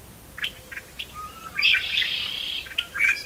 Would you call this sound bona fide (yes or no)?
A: yes